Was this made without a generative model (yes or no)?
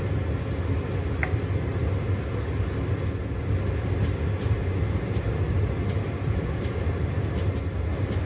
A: yes